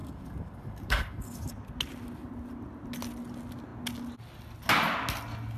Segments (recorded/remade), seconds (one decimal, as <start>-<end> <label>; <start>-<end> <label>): 0.0-1.5 remade; 1.5-5.6 recorded